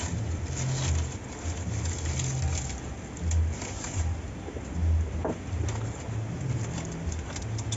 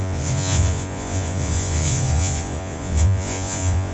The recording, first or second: first